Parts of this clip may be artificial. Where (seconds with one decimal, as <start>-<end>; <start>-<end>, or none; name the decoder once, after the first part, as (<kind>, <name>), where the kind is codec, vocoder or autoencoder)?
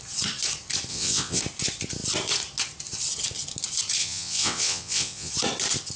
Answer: 0.9-1.4 (vocoder, WaveNeXt); 4.0-5.3